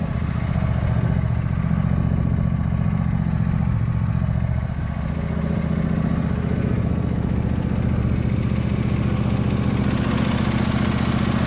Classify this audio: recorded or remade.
recorded